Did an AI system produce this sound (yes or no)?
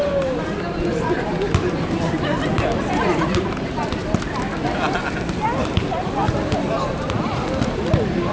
yes